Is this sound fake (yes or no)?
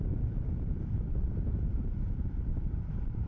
yes